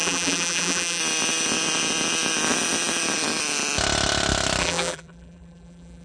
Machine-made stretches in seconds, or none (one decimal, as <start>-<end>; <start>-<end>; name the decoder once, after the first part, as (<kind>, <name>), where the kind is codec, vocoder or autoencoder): 0.0-1.0 (vocoder, BigVGAN v2); 4.6-6.0